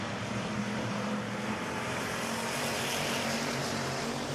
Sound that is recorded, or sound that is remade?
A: remade